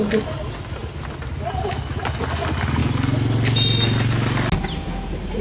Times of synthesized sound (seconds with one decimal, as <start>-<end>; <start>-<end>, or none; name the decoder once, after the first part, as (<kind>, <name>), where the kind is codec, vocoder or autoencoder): none